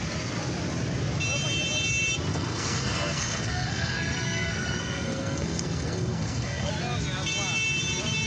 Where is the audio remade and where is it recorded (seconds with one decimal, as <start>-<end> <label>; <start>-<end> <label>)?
0.0-2.3 recorded; 2.3-6.7 remade; 6.7-8.3 recorded